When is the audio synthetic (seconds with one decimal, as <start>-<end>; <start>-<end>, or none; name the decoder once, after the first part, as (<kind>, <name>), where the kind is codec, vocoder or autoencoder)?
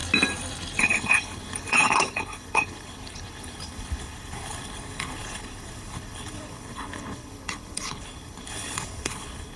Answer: 0.8-9.6 (codec, HILCodec)